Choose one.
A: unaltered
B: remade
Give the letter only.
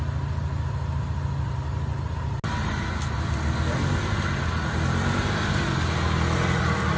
A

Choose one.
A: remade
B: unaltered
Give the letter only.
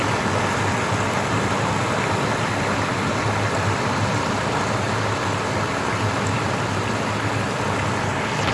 B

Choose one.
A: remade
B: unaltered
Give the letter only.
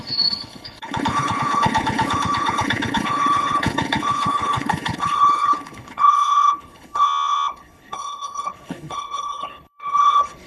A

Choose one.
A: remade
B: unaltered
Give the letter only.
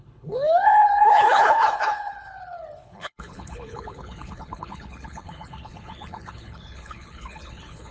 A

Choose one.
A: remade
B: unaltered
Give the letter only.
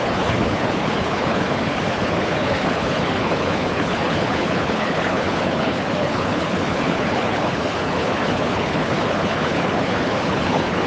A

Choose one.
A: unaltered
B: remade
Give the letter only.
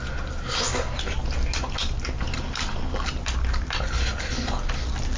A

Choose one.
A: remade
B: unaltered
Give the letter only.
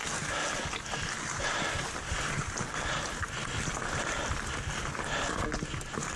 B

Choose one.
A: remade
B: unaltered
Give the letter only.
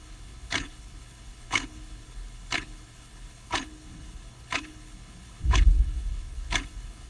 A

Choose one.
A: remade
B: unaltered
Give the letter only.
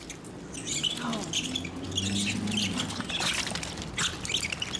B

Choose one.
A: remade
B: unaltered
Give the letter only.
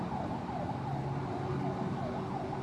B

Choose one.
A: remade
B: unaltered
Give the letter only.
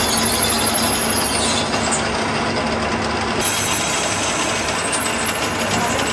B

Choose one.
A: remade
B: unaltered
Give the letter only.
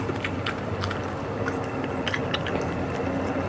B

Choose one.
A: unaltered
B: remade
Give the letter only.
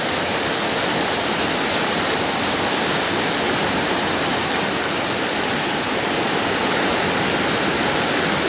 A